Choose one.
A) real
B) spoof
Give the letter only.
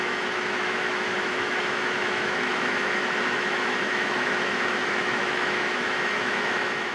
B